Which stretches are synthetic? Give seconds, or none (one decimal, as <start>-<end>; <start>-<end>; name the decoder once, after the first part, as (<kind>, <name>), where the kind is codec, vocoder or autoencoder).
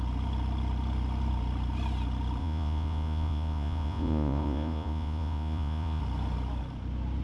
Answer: 2.4-6.0 (vocoder, Vocos)